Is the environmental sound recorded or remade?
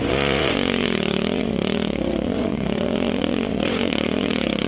remade